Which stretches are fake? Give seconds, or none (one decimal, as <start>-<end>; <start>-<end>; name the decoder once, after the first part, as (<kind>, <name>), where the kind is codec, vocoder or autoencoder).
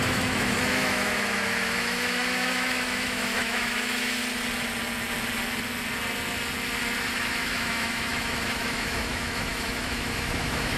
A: 0.0-4.2 (autoencoder, DAC-VAE); 7.1-10.8